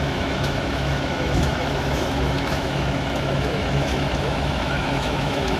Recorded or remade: remade